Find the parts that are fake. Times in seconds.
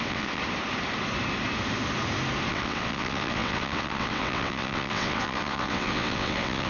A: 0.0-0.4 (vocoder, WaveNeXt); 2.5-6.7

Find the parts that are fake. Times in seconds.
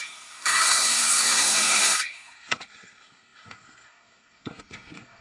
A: 0.0-5.2 (codec, SNAC)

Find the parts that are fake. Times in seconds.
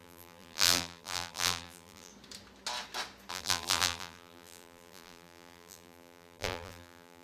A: 0.0-2.1 (vocoder, BigVGAN v2); 3.3-7.2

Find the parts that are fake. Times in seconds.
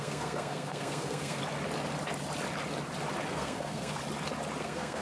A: 0.0-1.4 (codec, SNAC); 3.3-4.0; 4.6-5.0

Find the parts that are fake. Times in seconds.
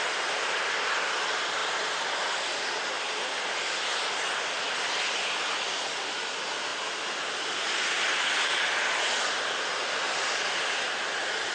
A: none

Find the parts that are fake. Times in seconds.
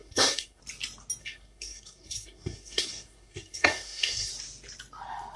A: 0.0-0.6 (codec, SNAC); 1.2-4.3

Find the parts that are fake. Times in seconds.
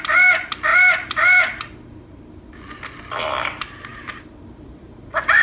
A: none